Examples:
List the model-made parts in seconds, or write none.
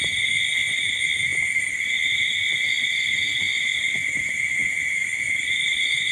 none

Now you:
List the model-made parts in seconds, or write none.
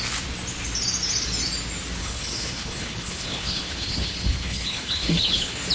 2.0-5.7 (codec, HILCodec)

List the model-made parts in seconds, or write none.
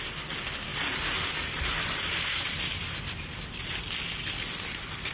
0.7-3.8 (vocoder, BigVGAN v2)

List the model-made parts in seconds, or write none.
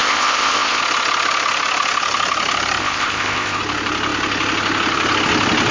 0.0-0.8 (codec, ZipCodec); 2.8-3.6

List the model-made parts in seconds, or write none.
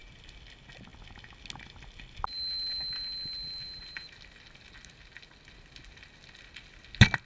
none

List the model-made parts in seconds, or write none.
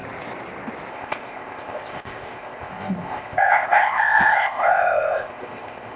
0.9-6.0 (codec, ZipCodec)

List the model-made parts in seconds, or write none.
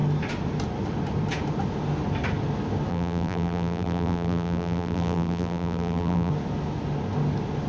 2.9-6.3 (vocoder, BigVGAN v2)